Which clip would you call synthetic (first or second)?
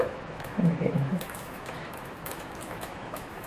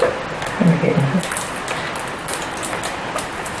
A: first